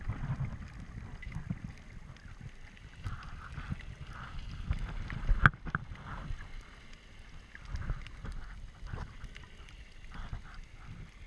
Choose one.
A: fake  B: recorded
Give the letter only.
B